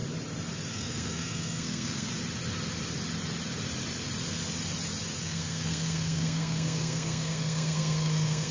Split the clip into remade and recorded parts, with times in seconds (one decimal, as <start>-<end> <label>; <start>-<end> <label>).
0.0-0.7 recorded; 0.7-2.1 remade; 2.1-5.2 recorded; 5.2-8.5 remade